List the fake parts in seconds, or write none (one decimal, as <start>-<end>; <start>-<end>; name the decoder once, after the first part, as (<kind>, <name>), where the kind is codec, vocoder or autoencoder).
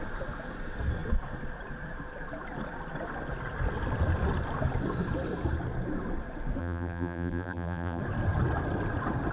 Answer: 6.6-8.0 (vocoder, BigVGAN v2)